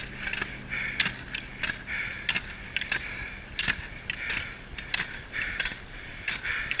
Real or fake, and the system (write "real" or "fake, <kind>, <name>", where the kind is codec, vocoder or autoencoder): real